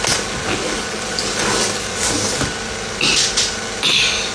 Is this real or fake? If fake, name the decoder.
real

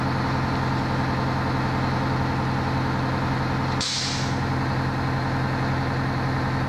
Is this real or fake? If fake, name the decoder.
real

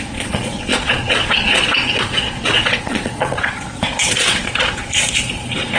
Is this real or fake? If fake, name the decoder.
fake, vocoder, Vocos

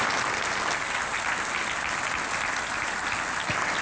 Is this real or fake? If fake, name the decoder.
real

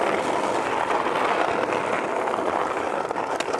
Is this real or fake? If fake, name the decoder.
real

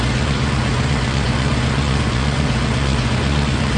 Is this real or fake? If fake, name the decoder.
fake, vocoder, Vocos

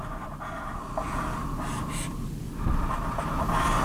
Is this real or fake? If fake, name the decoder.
real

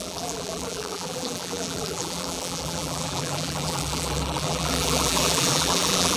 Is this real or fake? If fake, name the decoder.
fake, vocoder, BigVGAN v2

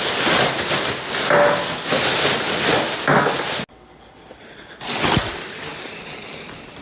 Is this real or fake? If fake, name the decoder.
real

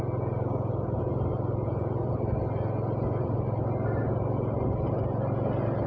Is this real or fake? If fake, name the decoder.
real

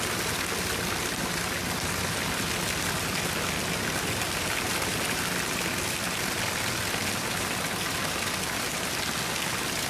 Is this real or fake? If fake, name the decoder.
real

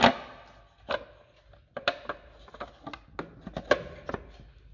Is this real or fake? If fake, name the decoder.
real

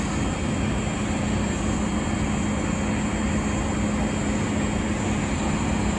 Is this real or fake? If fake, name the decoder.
real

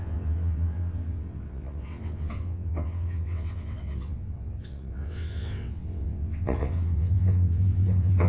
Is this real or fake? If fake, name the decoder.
fake, vocoder, WaveNeXt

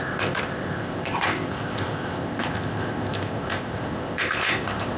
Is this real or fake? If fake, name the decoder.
fake, codec, ZipCodec